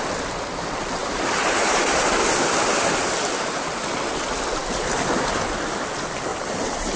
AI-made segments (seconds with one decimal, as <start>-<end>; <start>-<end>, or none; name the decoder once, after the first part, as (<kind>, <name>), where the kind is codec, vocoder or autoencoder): 1.0-2.3 (vocoder, BigVGAN v2); 6.3-7.0